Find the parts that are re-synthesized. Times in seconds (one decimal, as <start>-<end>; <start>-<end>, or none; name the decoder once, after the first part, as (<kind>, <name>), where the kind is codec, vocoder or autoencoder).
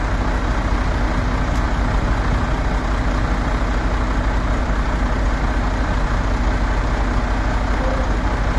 4.6-5.3 (vocoder, BigVGAN v2)